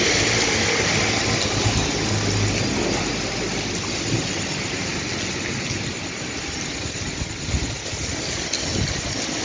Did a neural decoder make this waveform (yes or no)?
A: no